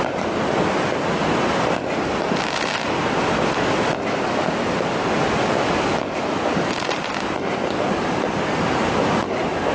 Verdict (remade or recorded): recorded